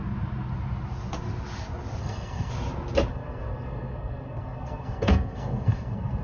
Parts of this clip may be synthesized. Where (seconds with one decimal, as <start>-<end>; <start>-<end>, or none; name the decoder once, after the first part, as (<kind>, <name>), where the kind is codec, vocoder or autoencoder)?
2.0-2.5 (codec, SNAC); 3.1-6.2